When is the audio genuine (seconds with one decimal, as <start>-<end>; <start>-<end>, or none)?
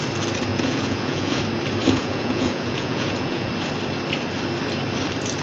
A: 0.0-0.5; 1.4-1.8; 3.5-5.4